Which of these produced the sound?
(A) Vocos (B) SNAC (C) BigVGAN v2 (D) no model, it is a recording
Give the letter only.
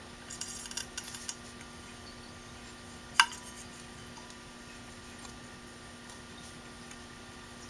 D